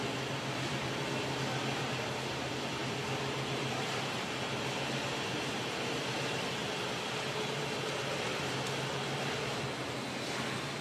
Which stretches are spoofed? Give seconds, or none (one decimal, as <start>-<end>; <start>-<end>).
0.0-2.8; 6.1-10.8

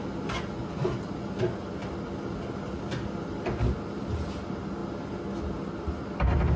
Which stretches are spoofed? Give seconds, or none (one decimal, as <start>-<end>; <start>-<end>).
none

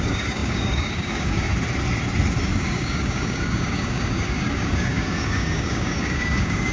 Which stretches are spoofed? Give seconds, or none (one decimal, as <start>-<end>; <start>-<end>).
0.0-1.5; 2.5-6.7

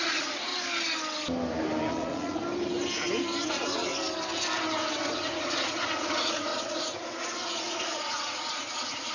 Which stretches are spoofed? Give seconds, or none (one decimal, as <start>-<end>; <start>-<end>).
0.0-0.5; 1.9-2.4; 3.5-3.9; 5.1-9.1